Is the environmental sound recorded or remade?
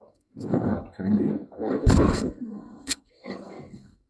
remade